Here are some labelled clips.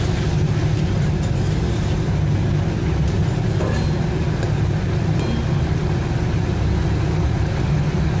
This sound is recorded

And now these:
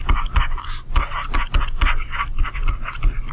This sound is recorded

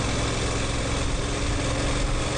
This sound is recorded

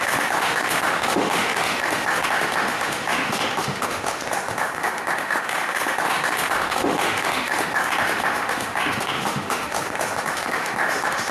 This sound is remade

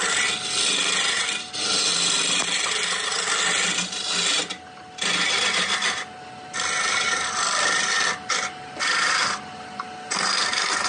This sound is recorded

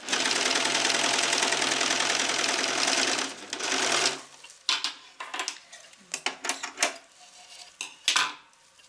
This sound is recorded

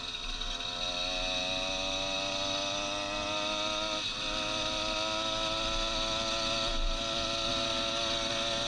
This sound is recorded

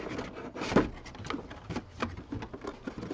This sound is recorded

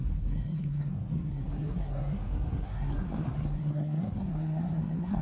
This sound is remade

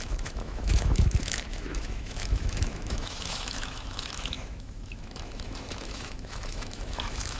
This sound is remade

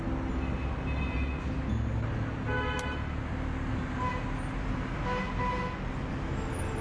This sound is recorded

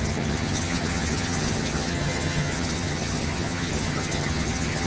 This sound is remade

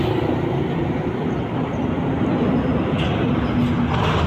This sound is recorded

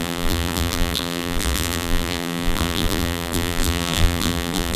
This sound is remade